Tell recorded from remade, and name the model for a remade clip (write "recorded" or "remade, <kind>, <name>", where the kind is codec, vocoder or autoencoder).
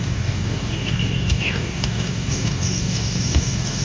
remade, codec, DAC